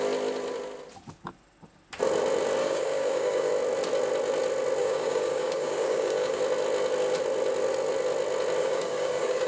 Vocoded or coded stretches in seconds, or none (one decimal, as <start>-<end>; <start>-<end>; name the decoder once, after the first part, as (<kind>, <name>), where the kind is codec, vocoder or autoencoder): 2.6-3.5 (codec, DAC); 4.8-6.4; 8.6-9.5